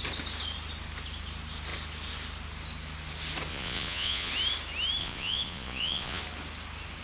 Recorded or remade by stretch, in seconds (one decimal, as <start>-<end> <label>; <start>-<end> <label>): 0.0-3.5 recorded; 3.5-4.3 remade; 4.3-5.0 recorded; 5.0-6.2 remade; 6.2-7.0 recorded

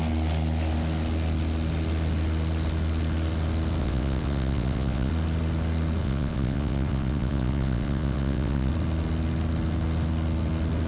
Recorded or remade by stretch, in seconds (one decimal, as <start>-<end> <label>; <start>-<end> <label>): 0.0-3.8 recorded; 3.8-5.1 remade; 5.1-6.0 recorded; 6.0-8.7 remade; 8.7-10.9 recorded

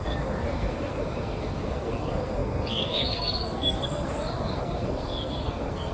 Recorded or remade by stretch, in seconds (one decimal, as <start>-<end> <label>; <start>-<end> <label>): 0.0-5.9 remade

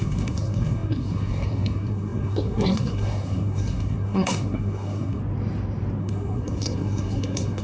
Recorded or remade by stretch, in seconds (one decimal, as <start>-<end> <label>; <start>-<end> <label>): 0.0-5.2 remade; 5.2-6.0 recorded; 6.0-7.6 remade